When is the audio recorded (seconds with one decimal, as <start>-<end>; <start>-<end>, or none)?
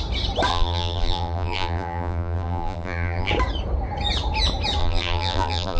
0.0-0.5; 3.3-4.8